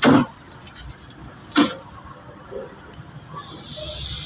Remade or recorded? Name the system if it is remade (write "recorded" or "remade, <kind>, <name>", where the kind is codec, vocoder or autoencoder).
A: recorded